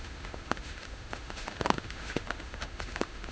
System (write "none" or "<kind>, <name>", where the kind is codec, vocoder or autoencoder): autoencoder, DAC-VAE